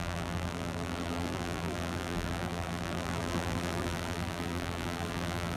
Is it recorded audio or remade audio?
remade